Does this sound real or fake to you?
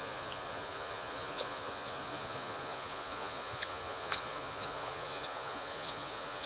fake